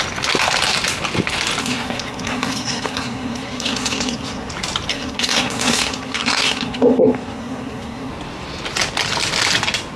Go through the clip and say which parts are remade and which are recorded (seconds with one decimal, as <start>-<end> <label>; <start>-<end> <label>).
0.0-1.6 recorded; 1.6-4.5 remade; 4.5-4.9 recorded; 4.9-8.1 remade; 8.1-10.0 recorded